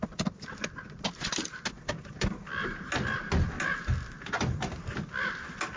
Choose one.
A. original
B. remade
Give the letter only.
A